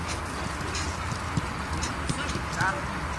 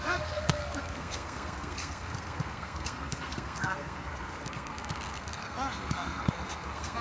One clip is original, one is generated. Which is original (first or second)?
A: first